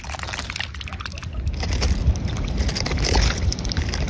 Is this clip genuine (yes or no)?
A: yes